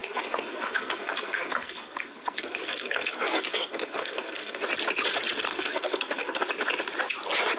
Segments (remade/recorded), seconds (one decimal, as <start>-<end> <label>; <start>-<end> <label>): 0.0-4.6 remade; 4.6-5.5 recorded; 5.5-6.4 remade; 6.4-7.6 recorded